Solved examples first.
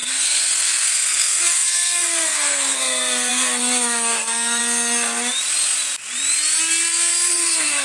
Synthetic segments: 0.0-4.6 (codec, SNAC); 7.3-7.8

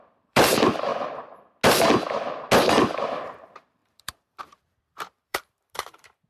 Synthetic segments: 0.0-0.9 (vocoder, BigVGAN v2); 3.1-6.3

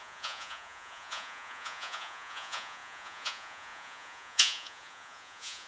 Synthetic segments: 0.0-5.7 (vocoder, Vocos)

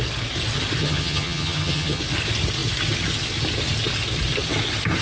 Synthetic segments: 0.8-2.0 (vocoder, HiFi-GAN)

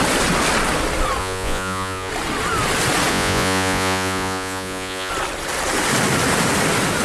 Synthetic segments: 1.2-2.1 (vocoder, Vocos); 3.1-5.1

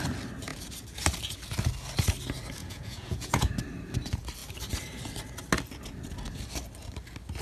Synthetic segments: 2.6-3.5 (vocoder, Vocos)

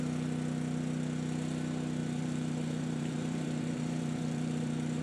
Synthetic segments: 2.0-5.0 (vocoder, BigVGAN v2)